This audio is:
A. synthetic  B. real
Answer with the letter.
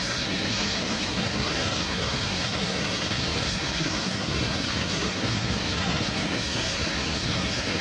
A